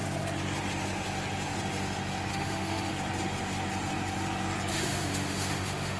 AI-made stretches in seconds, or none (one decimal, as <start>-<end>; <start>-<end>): 2.3-2.9; 4.7-6.0